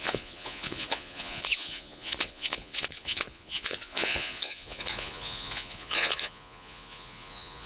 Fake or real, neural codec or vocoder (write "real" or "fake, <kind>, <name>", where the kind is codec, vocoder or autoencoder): fake, vocoder, Vocos